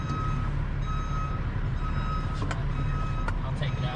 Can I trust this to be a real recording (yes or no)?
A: yes